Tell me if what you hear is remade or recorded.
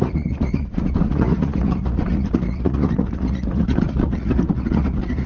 remade